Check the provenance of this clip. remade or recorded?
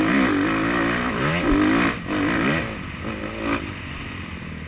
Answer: recorded